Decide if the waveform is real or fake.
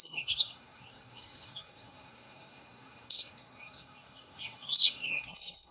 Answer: fake